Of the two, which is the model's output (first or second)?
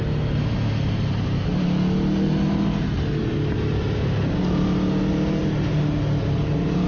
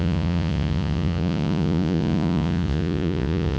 second